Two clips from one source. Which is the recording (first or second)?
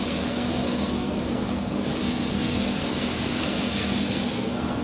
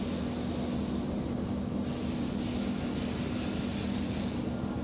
second